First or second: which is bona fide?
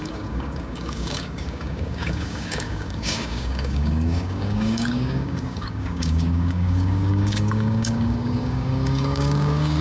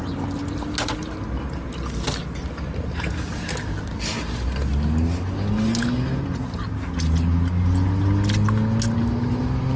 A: second